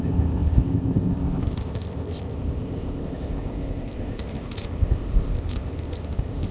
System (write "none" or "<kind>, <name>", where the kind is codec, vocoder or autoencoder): codec, ZipCodec